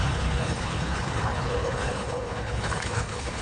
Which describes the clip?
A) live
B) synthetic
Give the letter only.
B